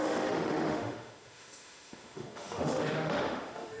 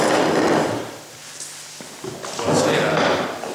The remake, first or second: first